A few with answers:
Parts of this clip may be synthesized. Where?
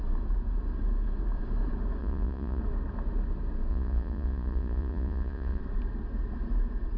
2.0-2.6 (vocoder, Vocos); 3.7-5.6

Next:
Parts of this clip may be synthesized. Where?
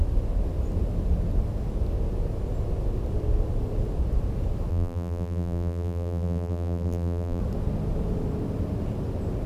4.7-7.4 (vocoder, BigVGAN v2)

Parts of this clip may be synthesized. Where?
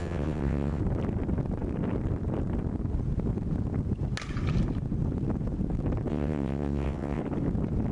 0.0-0.8 (vocoder, WaveNeXt); 6.1-7.2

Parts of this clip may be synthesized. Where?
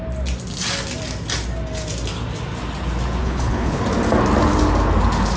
3.2-3.8 (codec, HILCodec)